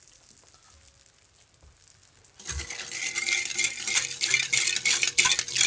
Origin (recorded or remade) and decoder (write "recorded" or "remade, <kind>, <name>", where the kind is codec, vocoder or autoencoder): recorded